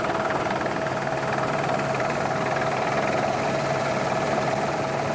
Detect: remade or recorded remade